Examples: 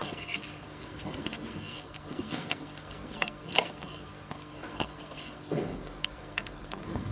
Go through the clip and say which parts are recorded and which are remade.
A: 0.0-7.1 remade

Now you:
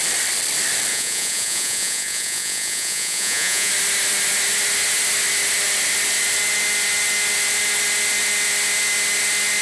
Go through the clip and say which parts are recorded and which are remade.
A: 0.0-0.9 recorded; 0.9-3.7 remade; 3.7-9.6 recorded